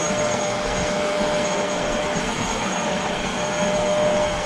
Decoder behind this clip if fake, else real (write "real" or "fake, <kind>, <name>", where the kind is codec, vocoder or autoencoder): fake, codec, SNAC